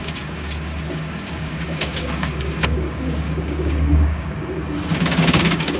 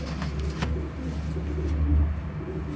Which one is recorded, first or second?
second